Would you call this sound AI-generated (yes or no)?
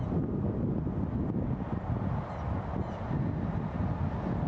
no